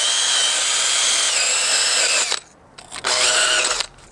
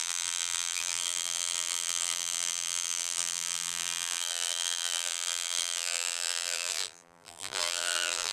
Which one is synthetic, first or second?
second